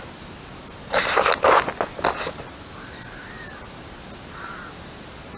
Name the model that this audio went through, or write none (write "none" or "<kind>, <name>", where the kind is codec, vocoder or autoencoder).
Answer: none